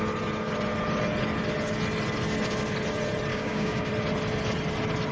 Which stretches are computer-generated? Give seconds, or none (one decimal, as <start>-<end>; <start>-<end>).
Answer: 3.3-3.9